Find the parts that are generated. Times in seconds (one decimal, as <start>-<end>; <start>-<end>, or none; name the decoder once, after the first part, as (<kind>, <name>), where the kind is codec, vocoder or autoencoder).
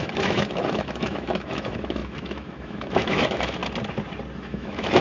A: 0.0-3.6 (autoencoder, DAC-VAE); 4.4-5.0